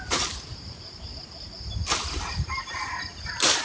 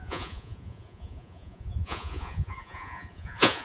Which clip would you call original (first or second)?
first